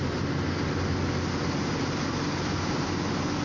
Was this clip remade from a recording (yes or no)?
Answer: no